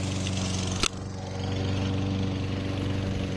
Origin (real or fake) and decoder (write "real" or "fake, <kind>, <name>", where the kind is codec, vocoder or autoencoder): real